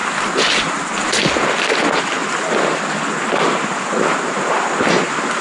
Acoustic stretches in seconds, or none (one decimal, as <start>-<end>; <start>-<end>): 0.0-5.4